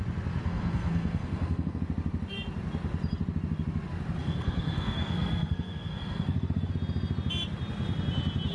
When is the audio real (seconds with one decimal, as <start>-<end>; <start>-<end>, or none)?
0.0-0.4; 1.8-4.2; 6.7-8.5

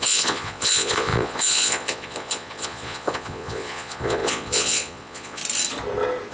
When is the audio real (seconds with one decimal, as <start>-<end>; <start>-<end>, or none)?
5.4-6.3